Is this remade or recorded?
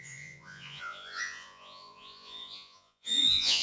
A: remade